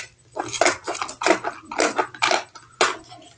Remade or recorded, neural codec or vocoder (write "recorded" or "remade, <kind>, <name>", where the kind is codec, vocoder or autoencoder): recorded